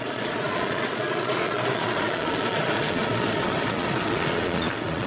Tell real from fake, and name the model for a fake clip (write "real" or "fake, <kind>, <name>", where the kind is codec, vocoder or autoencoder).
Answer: fake, vocoder, Vocos